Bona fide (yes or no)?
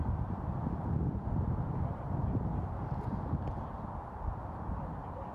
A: no